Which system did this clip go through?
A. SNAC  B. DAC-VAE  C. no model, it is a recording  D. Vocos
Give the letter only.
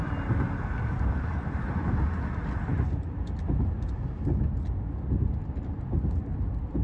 C